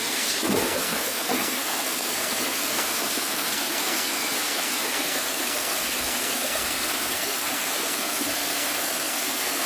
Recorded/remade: remade